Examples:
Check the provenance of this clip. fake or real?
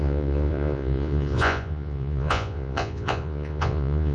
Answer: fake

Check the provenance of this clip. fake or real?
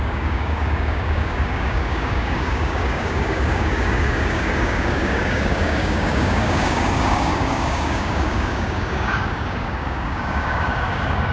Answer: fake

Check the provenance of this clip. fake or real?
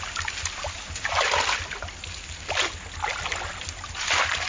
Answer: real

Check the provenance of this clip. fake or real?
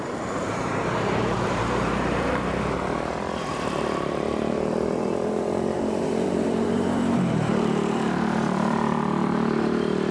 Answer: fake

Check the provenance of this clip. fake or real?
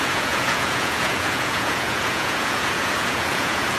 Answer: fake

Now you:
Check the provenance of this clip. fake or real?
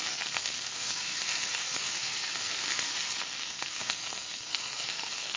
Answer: fake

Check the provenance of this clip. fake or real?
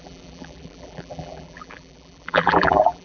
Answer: fake